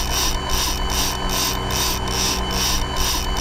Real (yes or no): yes